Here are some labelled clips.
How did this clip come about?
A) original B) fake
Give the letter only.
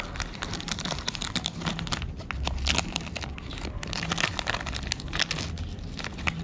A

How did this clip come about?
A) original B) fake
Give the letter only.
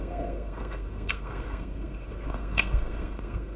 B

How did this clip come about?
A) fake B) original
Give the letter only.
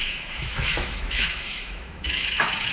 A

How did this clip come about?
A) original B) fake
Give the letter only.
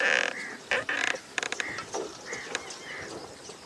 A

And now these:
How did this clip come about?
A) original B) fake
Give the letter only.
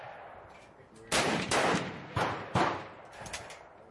A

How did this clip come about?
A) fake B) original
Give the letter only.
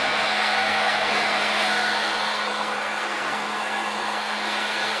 A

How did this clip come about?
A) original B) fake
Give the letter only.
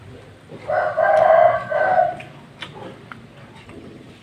A